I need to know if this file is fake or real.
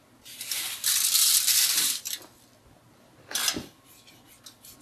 real